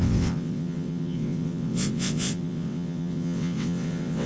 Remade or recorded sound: remade